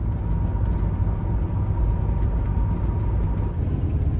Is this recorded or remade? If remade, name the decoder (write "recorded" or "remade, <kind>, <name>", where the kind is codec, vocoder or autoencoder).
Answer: recorded